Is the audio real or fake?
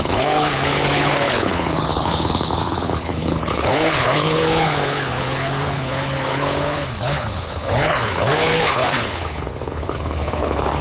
fake